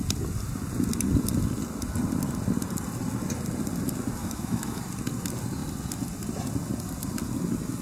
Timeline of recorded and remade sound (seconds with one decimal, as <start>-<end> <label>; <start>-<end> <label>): 0.0-4.2 recorded; 4.2-4.8 remade; 4.8-7.8 recorded